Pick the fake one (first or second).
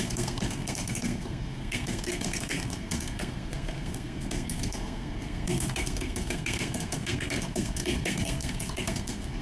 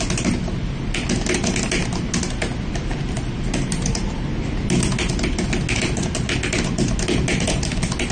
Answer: first